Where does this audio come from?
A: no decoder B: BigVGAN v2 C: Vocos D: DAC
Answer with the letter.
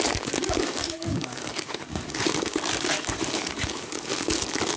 D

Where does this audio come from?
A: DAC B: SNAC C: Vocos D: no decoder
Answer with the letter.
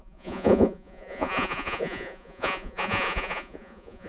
C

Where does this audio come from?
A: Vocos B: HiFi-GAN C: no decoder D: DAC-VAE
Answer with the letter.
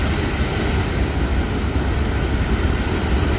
C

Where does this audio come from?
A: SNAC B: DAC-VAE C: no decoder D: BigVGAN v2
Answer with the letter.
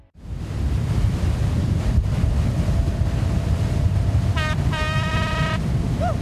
D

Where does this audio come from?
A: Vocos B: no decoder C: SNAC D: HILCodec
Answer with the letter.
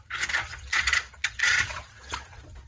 A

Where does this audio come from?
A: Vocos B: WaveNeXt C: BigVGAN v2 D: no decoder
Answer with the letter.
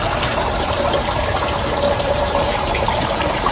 C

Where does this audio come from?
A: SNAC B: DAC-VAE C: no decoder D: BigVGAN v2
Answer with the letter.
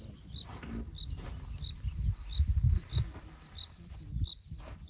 C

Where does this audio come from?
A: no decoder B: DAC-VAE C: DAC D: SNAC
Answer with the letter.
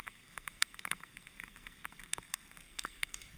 D